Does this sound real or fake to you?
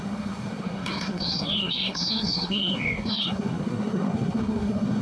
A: fake